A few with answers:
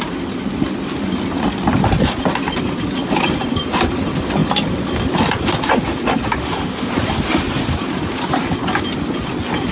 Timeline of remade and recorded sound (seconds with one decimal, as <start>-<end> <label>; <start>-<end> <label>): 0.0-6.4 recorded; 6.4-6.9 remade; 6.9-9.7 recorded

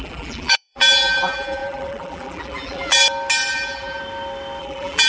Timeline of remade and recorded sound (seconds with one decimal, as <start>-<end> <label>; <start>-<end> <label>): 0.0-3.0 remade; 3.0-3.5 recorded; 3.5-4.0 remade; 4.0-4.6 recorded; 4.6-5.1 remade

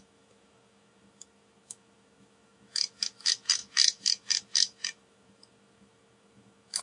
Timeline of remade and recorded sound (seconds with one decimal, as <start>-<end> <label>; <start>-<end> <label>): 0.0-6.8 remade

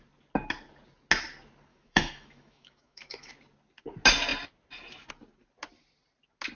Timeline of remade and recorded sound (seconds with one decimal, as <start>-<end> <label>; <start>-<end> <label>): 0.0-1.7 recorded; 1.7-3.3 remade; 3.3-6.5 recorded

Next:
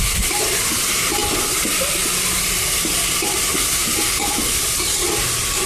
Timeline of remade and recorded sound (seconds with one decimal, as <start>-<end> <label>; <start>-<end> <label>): 0.0-5.7 recorded